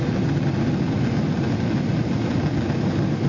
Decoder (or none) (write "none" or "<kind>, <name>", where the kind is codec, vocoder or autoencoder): none